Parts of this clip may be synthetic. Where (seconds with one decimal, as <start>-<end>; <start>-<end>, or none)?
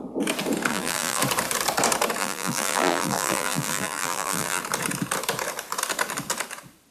0.7-1.2; 2.2-4.6